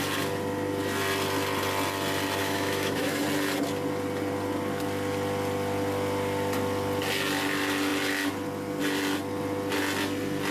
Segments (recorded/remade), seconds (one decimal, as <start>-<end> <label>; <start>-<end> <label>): 0.0-2.4 recorded; 2.4-3.2 remade; 3.2-10.5 recorded